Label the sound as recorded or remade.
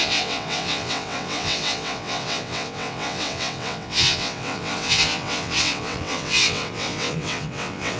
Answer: remade